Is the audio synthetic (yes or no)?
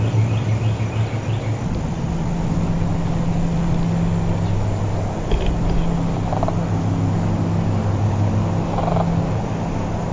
no